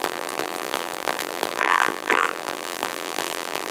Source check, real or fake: fake